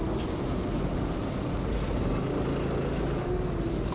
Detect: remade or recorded recorded